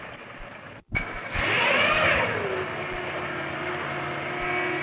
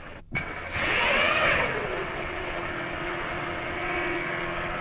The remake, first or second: second